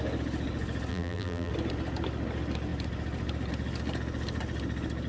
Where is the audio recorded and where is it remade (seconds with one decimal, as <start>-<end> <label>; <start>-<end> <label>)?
0.0-0.9 recorded; 0.9-1.5 remade; 1.5-5.1 recorded